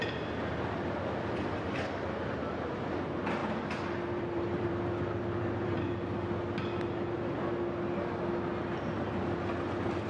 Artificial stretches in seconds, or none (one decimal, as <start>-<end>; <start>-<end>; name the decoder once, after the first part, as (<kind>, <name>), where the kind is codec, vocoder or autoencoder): 3.4-4.7 (vocoder, BigVGAN v2)